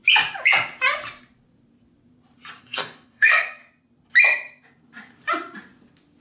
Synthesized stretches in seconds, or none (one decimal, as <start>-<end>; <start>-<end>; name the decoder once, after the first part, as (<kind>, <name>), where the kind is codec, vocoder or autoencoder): 2.6-3.6 (codec, SNAC)